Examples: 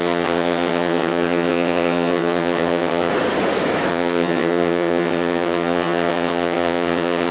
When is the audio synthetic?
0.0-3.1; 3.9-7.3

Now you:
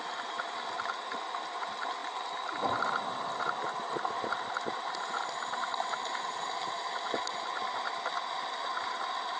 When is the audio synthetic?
none